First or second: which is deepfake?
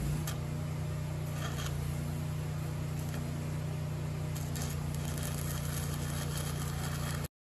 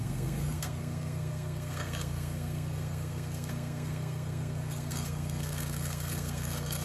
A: second